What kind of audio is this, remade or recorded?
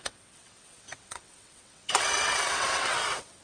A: remade